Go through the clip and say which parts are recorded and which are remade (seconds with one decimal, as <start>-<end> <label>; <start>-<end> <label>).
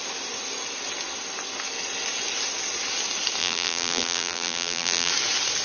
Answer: 0.0-3.4 recorded; 3.4-5.1 remade; 5.1-5.6 recorded